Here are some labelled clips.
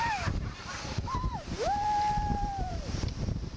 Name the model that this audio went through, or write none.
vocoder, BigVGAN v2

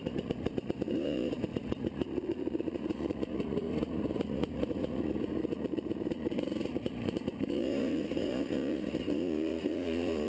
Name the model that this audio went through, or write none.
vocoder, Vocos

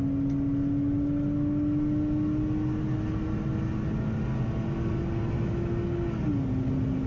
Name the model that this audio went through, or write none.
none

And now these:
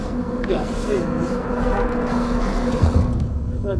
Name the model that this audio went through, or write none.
codec, SNAC